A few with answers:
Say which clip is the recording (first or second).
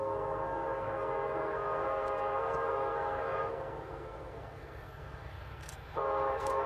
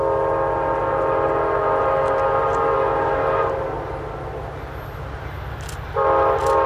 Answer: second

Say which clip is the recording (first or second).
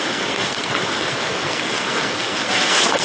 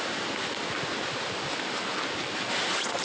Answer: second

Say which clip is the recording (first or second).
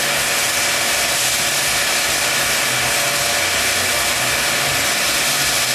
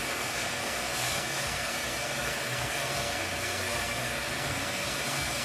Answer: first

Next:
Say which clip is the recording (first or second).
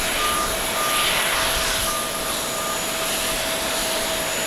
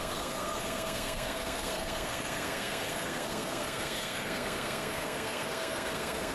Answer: first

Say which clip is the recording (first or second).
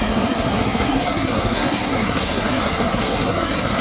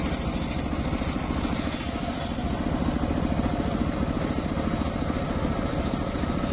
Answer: second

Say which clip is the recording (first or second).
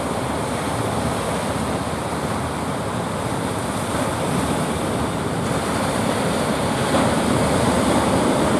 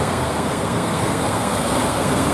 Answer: first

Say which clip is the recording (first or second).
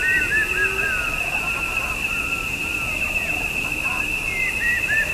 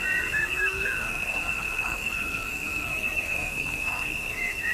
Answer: first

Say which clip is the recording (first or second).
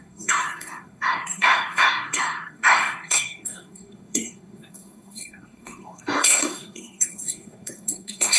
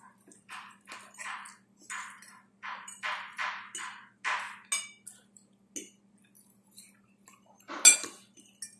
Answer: second